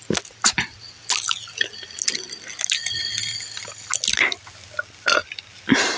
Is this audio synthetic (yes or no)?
no